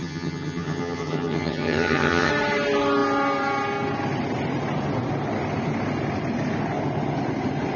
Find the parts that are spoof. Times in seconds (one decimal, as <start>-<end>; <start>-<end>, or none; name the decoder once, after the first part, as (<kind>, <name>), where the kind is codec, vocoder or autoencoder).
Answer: 0.0-2.3 (vocoder, HiFi-GAN)